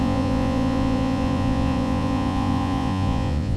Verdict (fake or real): fake